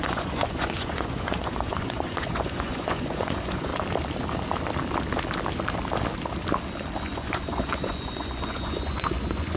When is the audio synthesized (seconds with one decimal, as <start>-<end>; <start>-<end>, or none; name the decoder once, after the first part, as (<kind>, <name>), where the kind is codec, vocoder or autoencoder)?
0.0-3.7 (vocoder, Vocos); 7.0-9.6